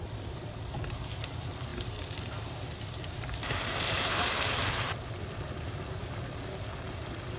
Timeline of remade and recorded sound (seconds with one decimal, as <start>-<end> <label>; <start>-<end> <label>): 0.0-7.4 remade